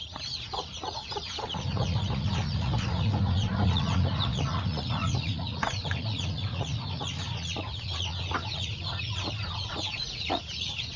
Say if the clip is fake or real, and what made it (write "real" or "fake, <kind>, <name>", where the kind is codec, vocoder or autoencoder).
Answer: fake, vocoder, Vocos